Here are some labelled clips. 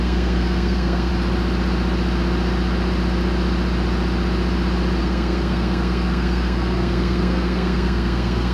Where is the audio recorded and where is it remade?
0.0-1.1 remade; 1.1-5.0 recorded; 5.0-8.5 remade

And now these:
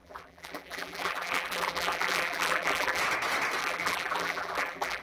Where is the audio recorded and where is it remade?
0.0-3.0 remade; 3.0-3.6 recorded; 3.6-5.0 remade

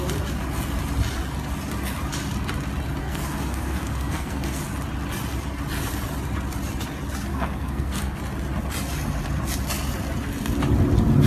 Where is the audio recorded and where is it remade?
0.0-3.0 recorded; 3.0-4.6 remade; 4.6-7.3 recorded; 7.3-8.2 remade; 8.2-11.3 recorded

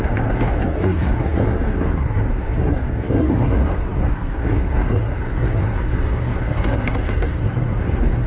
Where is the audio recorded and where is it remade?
0.0-8.3 remade

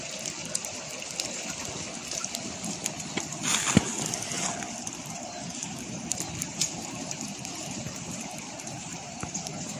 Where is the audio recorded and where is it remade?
0.0-0.4 remade; 0.4-4.9 recorded; 4.9-9.8 remade

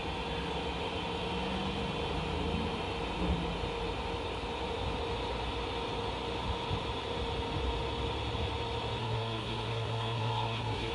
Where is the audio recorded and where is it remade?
0.0-9.0 recorded; 9.0-10.9 remade

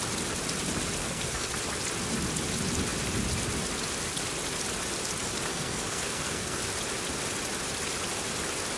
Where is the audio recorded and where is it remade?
0.0-1.0 recorded; 1.0-1.5 remade; 1.5-5.5 recorded; 5.5-6.6 remade; 6.6-8.8 recorded

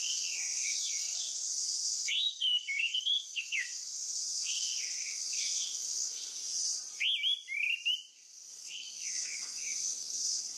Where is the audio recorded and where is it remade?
0.0-6.4 remade; 6.4-8.1 recorded; 8.1-10.6 remade